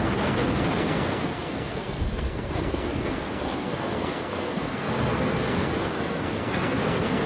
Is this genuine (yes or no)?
no